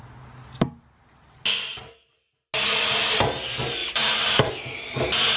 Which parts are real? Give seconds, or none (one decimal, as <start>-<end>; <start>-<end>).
0.0-3.8; 4.5-5.4